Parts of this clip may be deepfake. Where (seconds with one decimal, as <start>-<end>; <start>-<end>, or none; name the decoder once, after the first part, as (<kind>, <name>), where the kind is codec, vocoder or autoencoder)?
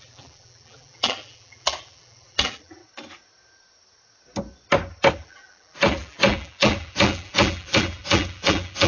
0.0-2.8 (vocoder, BigVGAN v2); 5.1-8.9